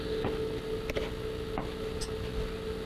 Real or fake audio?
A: real